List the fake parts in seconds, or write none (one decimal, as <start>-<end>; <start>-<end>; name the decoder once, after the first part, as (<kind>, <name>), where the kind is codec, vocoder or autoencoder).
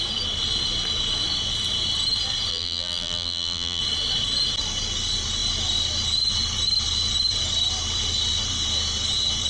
2.5-3.8 (vocoder, BigVGAN v2)